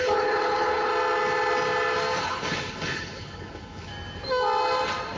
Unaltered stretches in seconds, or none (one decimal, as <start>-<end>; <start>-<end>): 0.9-2.2; 3.9-5.2